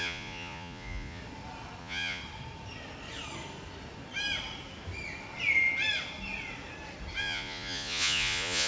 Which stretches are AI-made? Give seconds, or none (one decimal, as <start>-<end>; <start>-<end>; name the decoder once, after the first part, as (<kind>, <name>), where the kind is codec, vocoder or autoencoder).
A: 0.0-1.2 (vocoder, Vocos); 1.8-2.2; 7.2-8.7